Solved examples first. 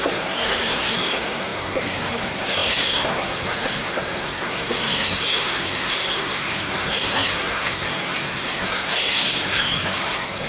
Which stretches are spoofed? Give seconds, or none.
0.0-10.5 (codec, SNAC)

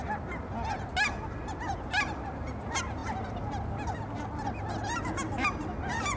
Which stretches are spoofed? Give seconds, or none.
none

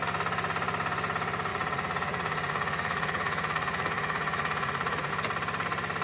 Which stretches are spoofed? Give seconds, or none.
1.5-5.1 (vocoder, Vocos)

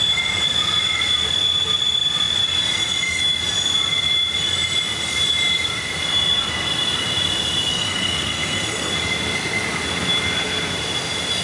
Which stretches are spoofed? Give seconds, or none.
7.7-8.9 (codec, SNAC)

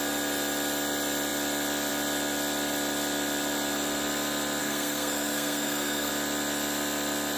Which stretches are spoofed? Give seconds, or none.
4.6-6.1 (codec, SNAC)

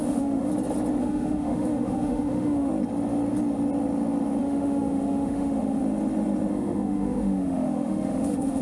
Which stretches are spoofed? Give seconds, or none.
0.0-0.5 (autoencoder, DAC-VAE); 1.0-2.7; 4.4-5.8; 6.5-8.6

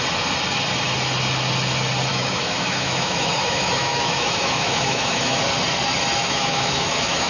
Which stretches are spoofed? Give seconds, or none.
2.1-5.4 (autoencoder, DAC-VAE); 6.2-7.3

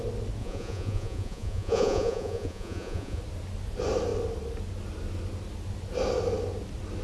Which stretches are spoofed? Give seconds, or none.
0.4-3.2 (vocoder, Vocos)